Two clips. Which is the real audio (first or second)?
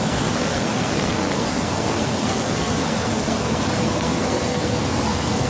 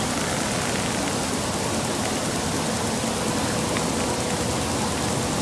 second